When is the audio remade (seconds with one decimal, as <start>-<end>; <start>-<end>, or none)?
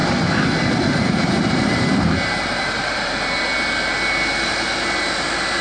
0.0-3.4